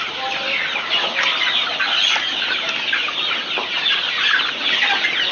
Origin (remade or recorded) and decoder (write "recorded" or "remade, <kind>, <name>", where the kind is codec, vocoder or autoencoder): recorded